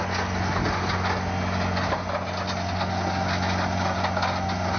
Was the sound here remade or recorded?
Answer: recorded